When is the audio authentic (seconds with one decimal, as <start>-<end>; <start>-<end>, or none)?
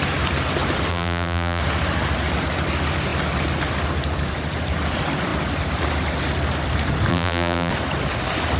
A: 0.0-0.9; 1.6-7.1; 7.7-8.6